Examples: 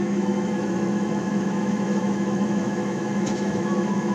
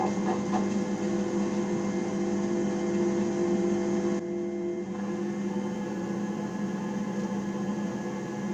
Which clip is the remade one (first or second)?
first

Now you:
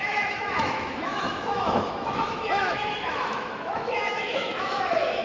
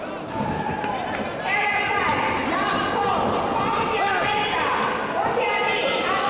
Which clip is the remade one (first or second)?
first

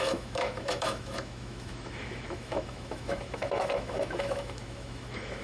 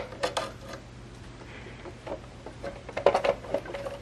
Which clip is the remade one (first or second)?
first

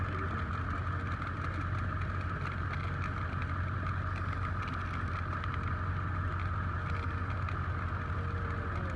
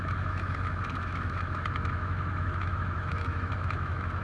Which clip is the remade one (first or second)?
second